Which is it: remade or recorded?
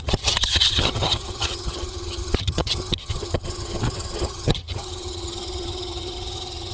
remade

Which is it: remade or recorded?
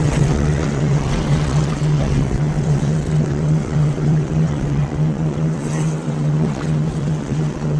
remade